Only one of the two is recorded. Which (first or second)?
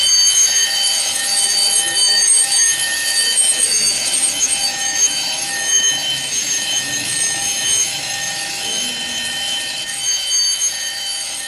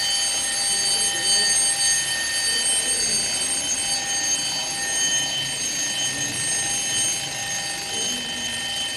second